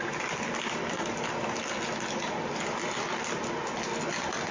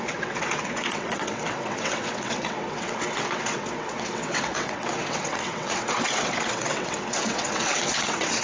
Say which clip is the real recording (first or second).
first